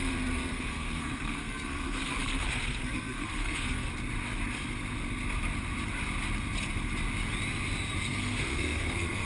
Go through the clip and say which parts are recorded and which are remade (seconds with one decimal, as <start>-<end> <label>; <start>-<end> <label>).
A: 0.0-3.9 remade; 3.9-8.0 recorded; 8.0-9.3 remade